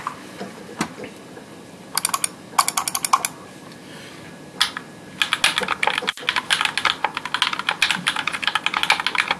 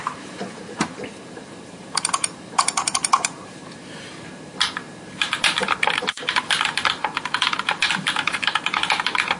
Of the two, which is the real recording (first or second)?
first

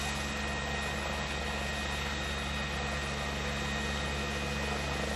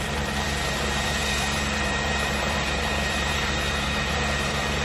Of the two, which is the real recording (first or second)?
first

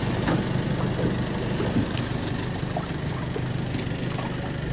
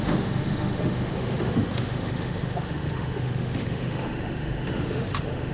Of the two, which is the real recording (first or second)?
first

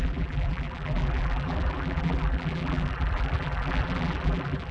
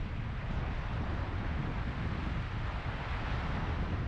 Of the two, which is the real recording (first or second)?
second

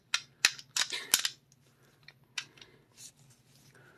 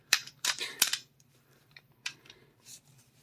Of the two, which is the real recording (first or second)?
first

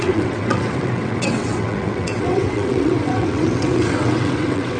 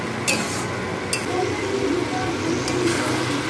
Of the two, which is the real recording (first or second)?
second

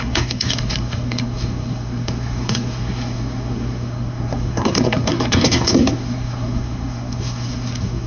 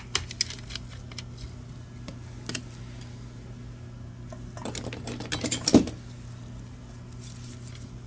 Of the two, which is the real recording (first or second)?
second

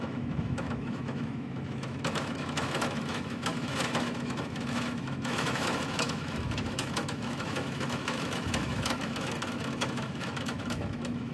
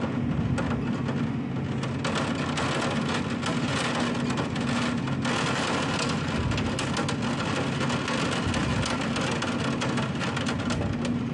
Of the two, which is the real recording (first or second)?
second